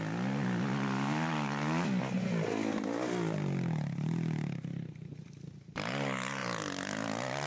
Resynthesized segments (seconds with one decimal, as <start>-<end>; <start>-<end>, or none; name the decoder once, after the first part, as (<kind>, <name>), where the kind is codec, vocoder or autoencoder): none